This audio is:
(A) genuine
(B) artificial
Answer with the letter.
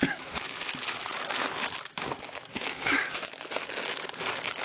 B